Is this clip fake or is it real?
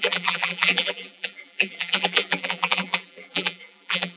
fake